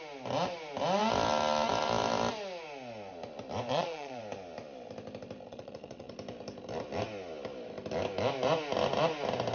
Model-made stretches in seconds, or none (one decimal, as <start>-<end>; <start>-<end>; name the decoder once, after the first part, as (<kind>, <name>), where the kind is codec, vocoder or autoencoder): 3.7-4.2 (vocoder, Vocos); 5.5-6.1

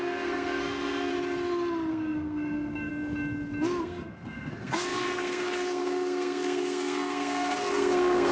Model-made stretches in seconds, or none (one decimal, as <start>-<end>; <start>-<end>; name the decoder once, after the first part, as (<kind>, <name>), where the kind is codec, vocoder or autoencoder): 0.0-1.1 (codec, SNAC); 1.9-2.9; 3.8-8.3